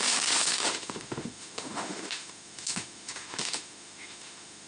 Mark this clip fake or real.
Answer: fake